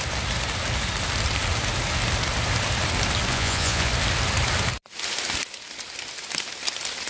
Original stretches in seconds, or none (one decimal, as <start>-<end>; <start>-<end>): 0.0-3.3; 3.9-7.1